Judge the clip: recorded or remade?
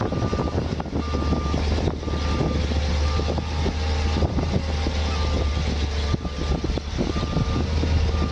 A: recorded